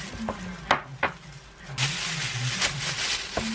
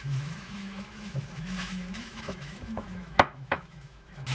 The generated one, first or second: second